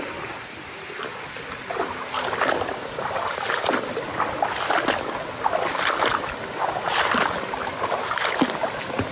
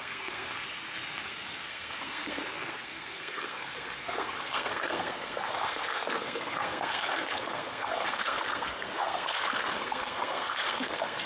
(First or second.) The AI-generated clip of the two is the second